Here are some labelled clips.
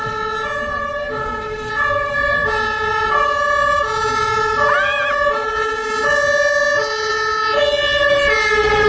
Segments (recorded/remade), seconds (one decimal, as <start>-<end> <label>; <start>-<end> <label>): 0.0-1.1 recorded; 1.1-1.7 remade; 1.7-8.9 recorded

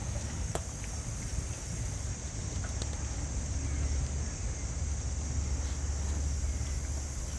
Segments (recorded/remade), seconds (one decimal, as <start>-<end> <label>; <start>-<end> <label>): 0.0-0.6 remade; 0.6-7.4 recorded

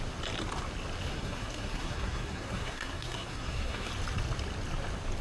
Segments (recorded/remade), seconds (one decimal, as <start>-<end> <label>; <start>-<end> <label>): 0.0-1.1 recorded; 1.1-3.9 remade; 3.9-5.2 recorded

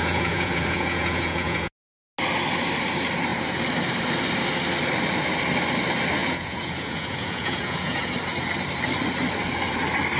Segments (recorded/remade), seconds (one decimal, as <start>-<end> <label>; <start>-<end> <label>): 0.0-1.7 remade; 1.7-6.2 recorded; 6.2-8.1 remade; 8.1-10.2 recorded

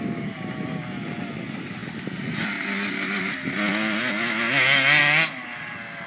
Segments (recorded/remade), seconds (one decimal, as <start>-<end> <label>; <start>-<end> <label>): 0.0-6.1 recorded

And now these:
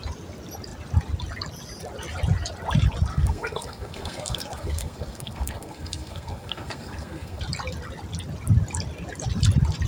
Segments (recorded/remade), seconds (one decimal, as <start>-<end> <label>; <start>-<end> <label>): 0.0-3.1 recorded; 3.1-7.4 remade; 7.4-9.9 recorded

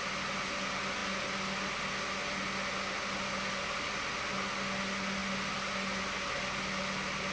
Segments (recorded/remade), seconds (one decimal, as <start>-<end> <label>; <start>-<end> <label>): 0.0-7.3 recorded

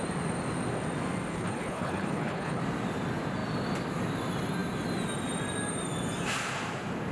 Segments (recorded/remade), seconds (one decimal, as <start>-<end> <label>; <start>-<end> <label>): 0.0-1.3 recorded; 1.3-2.6 remade; 2.6-7.1 recorded